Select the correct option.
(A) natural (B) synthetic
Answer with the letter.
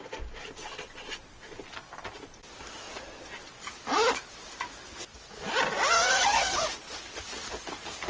A